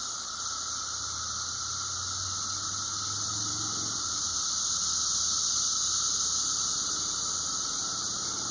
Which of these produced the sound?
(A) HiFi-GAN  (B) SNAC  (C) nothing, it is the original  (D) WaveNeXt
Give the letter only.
C